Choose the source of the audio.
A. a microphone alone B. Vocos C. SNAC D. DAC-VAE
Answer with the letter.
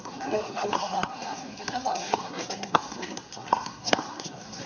C